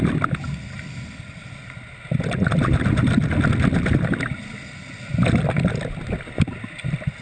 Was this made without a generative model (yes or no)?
yes